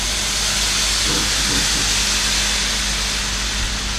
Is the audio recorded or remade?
recorded